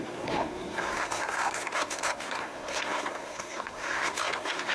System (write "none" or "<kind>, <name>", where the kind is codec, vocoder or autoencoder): codec, SNAC